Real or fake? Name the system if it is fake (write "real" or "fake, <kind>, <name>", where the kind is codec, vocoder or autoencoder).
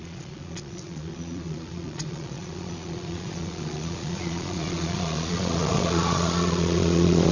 fake, vocoder, Vocos